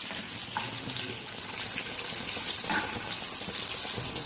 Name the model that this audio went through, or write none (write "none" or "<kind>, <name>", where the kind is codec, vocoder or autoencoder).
none